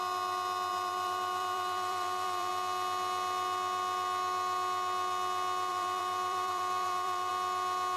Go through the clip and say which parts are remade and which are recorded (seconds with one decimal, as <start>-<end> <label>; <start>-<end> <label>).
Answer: 0.0-0.7 recorded; 0.7-2.5 remade; 2.5-5.7 recorded; 5.7-7.3 remade; 7.3-8.0 recorded